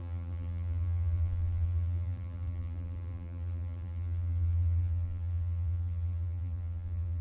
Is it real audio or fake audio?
fake